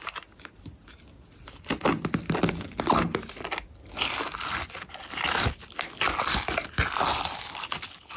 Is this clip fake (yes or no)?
no